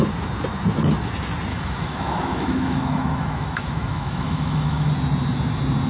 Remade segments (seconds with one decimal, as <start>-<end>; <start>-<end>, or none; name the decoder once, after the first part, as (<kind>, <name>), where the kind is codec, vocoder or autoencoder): 1.5-4.9 (autoencoder, DAC-VAE)